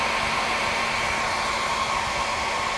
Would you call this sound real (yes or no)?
yes